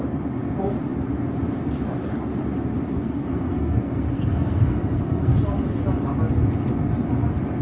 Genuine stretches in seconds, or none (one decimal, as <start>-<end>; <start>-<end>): 0.0-2.9; 5.4-7.6